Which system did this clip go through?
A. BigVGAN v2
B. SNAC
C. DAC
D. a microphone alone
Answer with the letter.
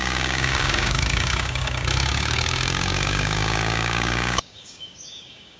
C